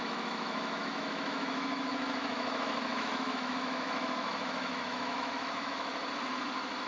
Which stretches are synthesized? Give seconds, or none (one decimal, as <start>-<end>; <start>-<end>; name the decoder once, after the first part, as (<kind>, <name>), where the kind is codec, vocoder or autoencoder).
0.0-5.9 (autoencoder, DAC-VAE)